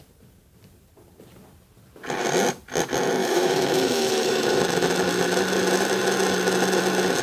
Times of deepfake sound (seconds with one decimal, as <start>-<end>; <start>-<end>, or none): 3.2-4.6